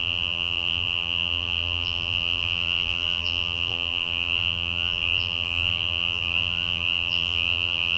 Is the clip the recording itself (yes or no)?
no